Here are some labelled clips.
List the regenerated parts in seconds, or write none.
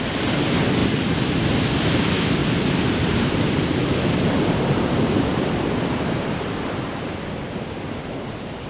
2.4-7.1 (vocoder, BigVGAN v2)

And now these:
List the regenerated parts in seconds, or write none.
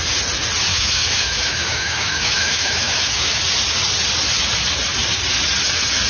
0.7-3.4 (autoencoder, DAC-VAE)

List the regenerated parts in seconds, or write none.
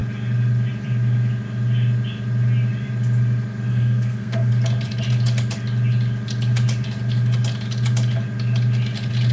3.7-4.5 (codec, SNAC)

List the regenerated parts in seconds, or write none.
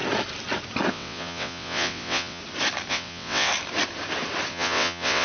0.9-2.4 (vocoder, WaveNeXt); 2.9-3.5; 4.5-5.2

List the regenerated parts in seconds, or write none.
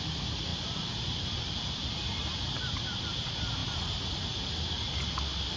none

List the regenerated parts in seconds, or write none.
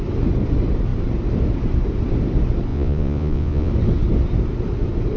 2.7-3.7 (vocoder, Vocos)